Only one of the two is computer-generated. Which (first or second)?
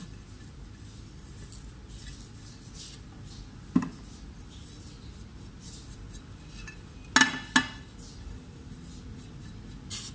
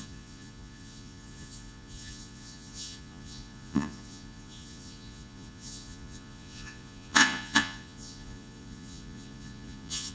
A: second